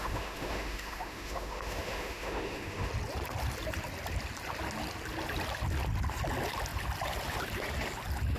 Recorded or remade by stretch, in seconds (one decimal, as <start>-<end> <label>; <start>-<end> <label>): 0.0-2.9 remade; 2.9-8.4 recorded